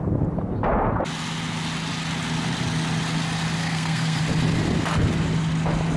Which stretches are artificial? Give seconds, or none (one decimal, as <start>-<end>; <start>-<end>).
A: 3.6-4.2